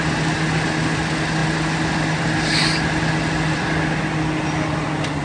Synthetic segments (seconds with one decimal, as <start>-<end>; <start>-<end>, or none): none